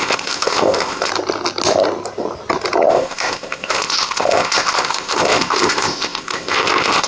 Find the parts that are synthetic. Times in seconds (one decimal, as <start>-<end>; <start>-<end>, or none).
0.0-1.1; 2.9-7.1